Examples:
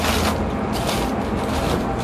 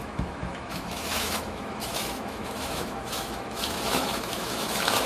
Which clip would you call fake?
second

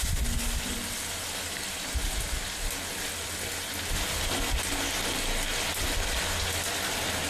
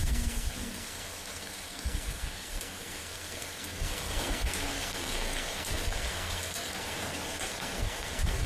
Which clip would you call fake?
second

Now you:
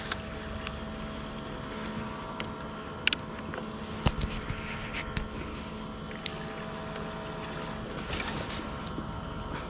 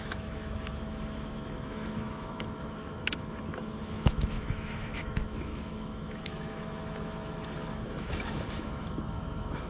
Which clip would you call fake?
second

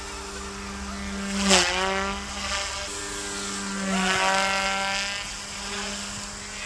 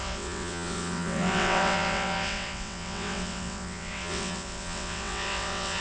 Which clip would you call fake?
second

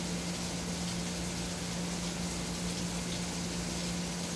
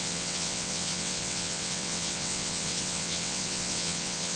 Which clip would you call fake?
second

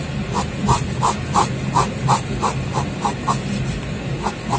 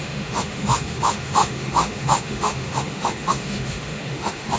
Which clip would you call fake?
second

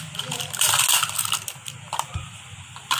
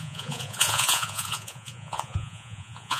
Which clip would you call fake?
second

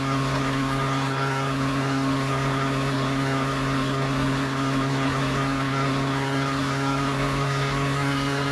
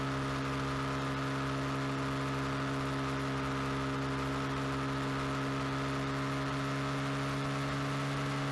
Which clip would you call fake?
first